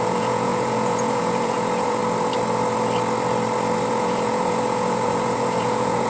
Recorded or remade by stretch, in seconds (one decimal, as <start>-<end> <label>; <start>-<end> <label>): 0.0-2.0 remade; 2.0-3.9 recorded; 3.9-6.1 remade